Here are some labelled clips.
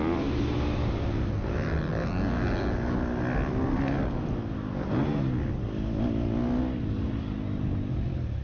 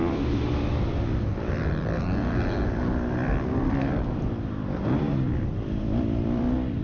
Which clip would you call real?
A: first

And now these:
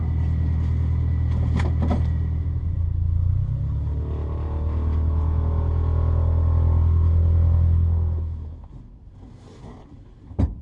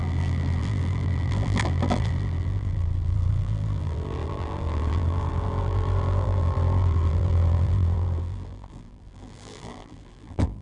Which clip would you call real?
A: first